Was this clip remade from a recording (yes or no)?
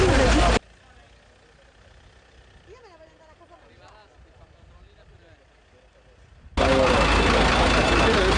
no